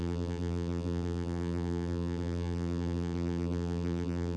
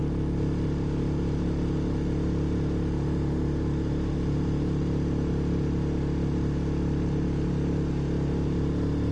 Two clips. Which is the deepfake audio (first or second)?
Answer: first